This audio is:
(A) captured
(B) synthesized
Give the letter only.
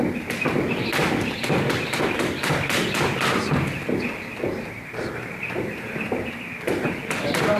A